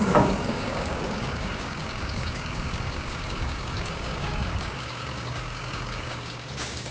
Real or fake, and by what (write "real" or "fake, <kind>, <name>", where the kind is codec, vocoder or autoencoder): fake, codec, DAC